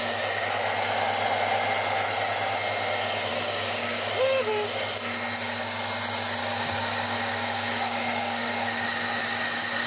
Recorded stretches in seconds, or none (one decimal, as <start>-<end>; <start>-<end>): 0.0-3.3; 4.1-6.4; 8.7-9.9